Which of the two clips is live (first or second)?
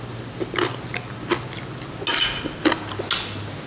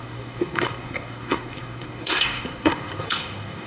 first